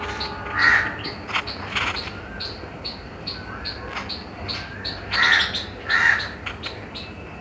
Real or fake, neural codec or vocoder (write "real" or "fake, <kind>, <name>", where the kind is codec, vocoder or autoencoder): real